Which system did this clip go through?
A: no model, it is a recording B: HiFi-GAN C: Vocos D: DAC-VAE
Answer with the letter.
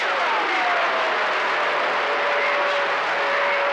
A